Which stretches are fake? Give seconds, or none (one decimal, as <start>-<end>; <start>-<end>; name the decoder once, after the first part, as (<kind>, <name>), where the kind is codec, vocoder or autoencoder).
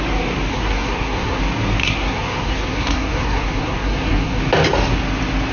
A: 0.5-1.4 (codec, SNAC); 1.8-4.4